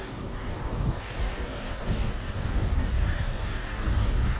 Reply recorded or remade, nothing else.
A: remade